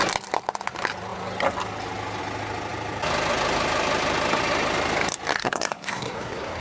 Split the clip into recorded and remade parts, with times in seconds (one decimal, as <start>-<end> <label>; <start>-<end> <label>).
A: 0.0-5.4 recorded; 5.4-6.6 remade